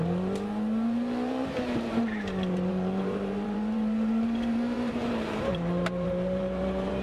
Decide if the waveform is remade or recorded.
remade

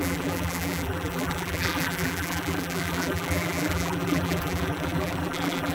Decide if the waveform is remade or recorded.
remade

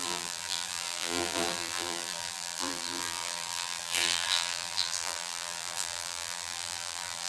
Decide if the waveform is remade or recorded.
remade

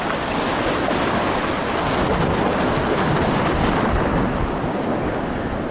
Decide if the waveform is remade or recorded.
recorded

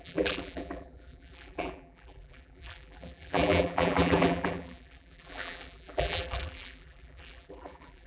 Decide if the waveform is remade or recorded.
remade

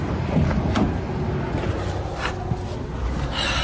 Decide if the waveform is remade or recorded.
recorded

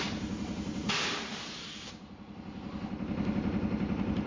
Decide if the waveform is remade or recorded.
remade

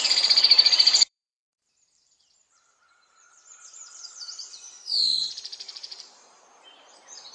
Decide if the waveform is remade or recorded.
remade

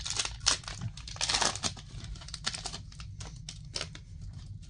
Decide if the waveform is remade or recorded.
recorded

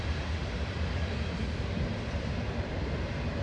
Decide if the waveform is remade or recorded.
remade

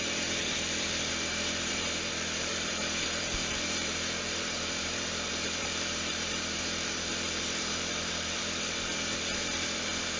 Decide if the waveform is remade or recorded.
remade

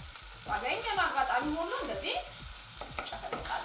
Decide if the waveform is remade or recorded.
recorded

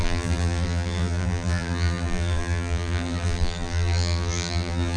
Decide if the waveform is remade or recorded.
remade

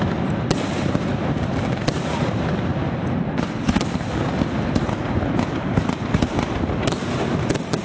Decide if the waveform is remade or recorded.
recorded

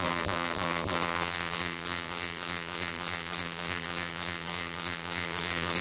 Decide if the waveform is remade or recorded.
remade